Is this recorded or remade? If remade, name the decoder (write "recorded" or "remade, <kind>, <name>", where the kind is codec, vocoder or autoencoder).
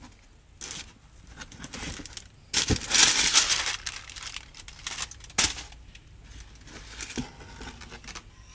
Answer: recorded